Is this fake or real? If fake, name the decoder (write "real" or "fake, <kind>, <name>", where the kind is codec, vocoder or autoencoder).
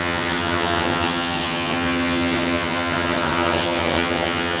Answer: fake, vocoder, HiFi-GAN